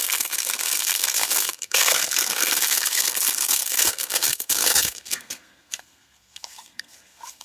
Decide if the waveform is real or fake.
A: fake